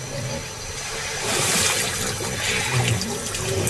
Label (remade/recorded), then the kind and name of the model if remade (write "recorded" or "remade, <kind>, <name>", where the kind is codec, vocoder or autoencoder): recorded